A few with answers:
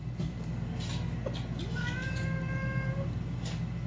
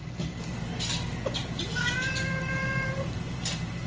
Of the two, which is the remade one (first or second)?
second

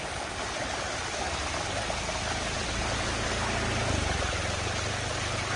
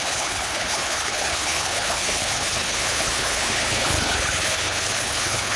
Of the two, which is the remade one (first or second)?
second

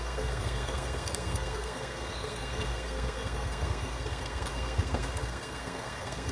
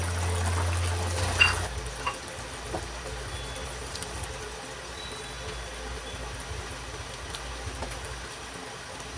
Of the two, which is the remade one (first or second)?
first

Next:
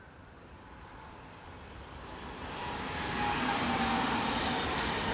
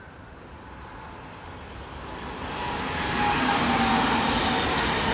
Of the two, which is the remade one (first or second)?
first